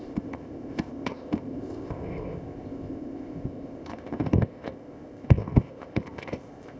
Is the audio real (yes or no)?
no